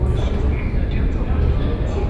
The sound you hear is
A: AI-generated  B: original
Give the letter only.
B